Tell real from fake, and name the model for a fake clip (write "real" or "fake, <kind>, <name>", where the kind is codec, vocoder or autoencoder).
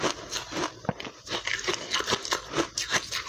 real